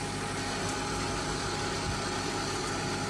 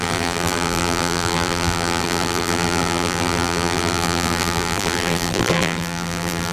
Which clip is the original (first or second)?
first